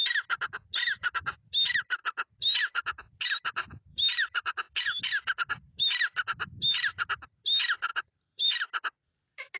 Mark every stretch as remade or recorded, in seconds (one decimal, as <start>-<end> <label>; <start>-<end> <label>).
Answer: 0.0-3.9 recorded; 3.9-5.0 remade; 5.0-7.9 recorded; 7.9-8.5 remade; 8.5-9.6 recorded